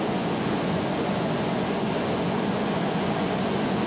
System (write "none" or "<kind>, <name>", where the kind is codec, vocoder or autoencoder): vocoder, Vocos